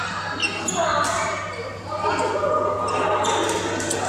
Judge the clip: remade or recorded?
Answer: recorded